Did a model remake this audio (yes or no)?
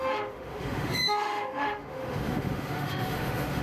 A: yes